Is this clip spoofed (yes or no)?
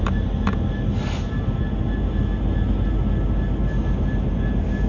no